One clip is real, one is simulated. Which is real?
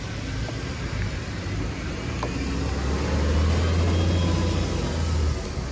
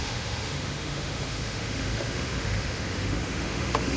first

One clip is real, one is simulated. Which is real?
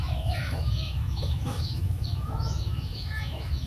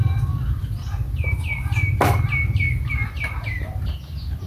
second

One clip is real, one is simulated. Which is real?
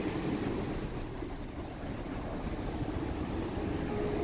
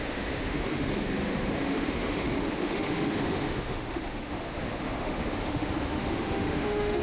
first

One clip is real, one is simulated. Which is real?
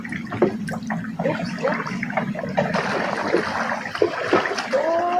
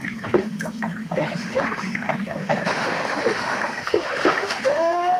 first